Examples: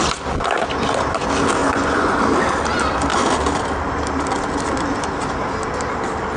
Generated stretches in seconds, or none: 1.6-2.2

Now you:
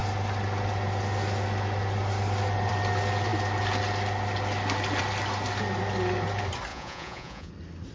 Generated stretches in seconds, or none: 6.7-7.5